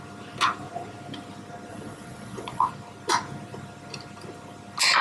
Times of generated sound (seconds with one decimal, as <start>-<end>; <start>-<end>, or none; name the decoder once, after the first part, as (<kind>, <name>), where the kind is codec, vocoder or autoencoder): 1.7-2.7 (vocoder, Vocos)

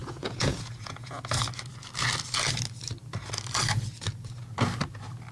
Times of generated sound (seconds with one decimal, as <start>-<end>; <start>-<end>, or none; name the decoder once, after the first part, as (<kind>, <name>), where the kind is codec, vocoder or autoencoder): 0.0-1.2 (vocoder, Vocos)

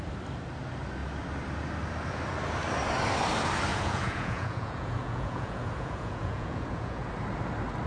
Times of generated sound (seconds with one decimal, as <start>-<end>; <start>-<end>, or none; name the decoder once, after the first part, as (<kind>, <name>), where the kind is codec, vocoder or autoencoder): 3.7-7.1 (vocoder, Vocos)

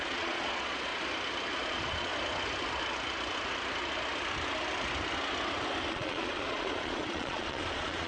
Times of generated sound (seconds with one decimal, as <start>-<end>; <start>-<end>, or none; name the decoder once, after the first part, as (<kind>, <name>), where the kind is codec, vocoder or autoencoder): 0.0-0.9 (vocoder, Vocos); 1.7-2.1; 5.9-8.1